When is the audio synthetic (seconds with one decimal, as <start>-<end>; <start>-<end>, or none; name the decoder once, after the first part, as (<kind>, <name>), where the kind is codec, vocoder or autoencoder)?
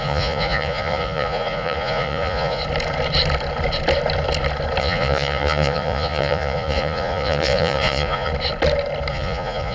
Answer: 0.0-2.6 (vocoder, Vocos); 4.8-8.3; 9.1-9.7